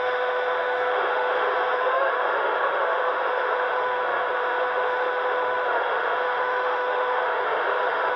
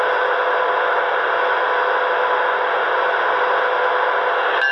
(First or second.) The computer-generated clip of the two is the first